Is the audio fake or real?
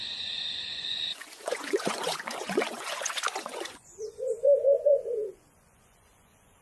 fake